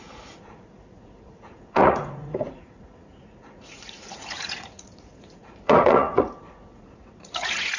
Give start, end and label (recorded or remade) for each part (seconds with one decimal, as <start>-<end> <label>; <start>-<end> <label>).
0.0-7.8 remade